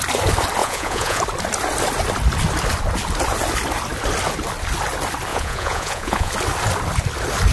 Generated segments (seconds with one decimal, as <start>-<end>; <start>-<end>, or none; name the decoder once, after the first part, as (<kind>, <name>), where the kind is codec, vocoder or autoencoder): 0.6-1.2 (vocoder, Vocos); 5.3-6.3